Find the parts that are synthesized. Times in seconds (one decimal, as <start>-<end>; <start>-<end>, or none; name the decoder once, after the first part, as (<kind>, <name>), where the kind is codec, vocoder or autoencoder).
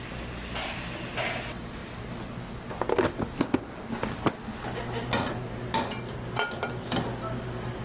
none